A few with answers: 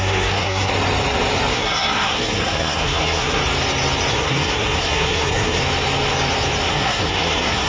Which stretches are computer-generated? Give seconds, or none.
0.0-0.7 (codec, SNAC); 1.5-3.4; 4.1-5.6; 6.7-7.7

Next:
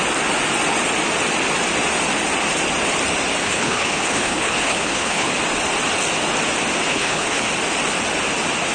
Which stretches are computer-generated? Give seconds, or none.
3.4-5.3 (codec, HILCodec); 6.9-7.5

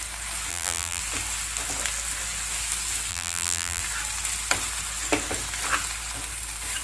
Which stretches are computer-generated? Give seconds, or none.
0.5-1.0 (vocoder, BigVGAN v2); 3.1-3.8

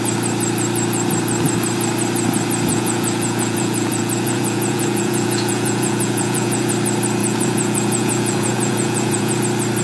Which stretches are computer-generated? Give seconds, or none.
2.7-6.7 (vocoder, Vocos); 7.2-9.4

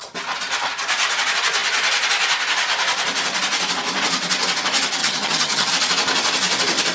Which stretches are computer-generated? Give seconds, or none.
5.0-5.7 (vocoder, HiFi-GAN)